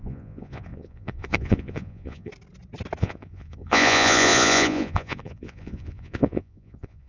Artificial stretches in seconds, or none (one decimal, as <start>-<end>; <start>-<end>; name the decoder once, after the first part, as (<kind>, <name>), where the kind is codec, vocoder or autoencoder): 0.0-2.3 (vocoder, Vocos); 3.0-7.1